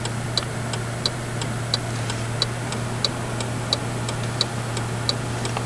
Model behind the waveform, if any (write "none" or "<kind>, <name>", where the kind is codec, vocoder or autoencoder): none